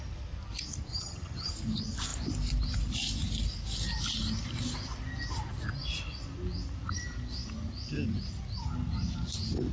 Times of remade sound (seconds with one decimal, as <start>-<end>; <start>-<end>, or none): 0.9-1.5